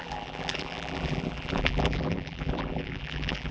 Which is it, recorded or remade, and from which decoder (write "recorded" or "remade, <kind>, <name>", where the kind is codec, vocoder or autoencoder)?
remade, vocoder, BigVGAN v2